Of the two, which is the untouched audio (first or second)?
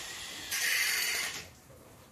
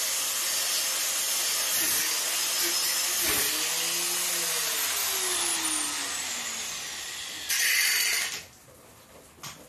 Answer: second